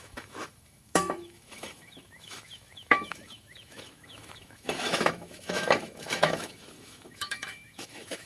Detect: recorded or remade remade